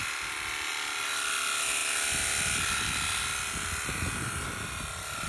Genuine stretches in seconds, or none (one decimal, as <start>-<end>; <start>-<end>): 0.0-5.3